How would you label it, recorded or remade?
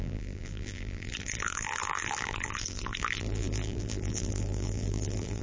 remade